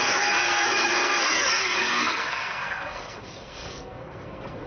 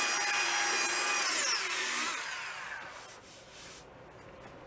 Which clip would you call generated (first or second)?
first